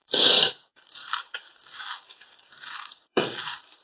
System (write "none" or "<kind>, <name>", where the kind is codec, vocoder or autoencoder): codec, DAC